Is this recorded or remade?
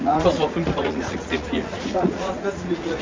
remade